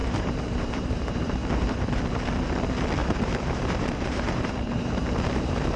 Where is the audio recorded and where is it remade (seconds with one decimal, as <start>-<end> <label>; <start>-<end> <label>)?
0.0-2.0 remade; 2.0-3.0 recorded; 3.0-5.8 remade